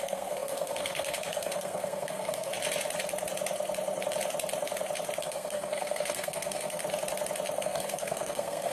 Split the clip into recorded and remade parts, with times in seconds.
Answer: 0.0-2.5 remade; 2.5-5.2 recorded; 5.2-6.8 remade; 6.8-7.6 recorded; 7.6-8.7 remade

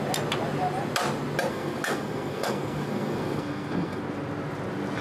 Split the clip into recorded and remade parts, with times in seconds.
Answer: 0.0-1.5 recorded; 1.5-4.0 remade; 4.0-5.0 recorded

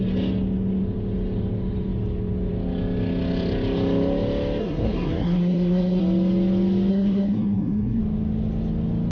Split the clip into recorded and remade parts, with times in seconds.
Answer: 0.0-4.6 recorded; 4.6-6.0 remade; 6.0-6.9 recorded; 6.9-8.0 remade; 8.0-9.1 recorded

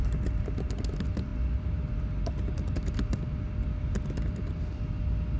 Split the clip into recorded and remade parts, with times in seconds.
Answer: 0.0-5.4 recorded

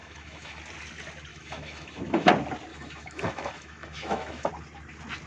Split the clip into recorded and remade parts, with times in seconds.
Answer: 0.0-0.6 remade; 0.6-1.3 recorded; 1.3-2.3 remade; 2.3-2.7 recorded; 2.7-4.5 remade; 4.5-5.3 recorded

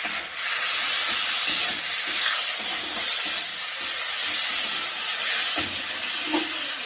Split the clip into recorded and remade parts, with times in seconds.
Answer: 0.0-6.9 recorded